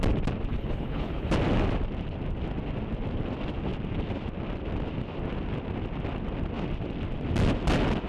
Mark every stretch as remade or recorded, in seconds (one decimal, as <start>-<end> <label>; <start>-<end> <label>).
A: 0.0-0.5 recorded; 0.5-1.3 remade; 1.3-8.1 recorded